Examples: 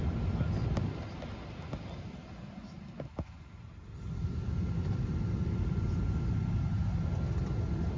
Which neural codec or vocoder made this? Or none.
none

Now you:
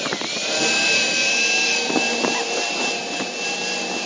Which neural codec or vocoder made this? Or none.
vocoder, BigVGAN v2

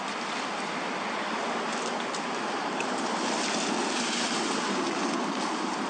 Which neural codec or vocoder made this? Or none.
vocoder, BigVGAN v2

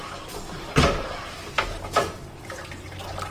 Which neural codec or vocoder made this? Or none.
none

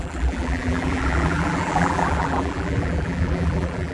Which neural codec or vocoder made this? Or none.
vocoder, BigVGAN v2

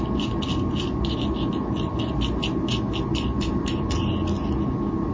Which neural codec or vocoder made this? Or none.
none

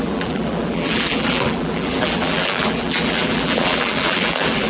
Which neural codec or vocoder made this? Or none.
vocoder, BigVGAN v2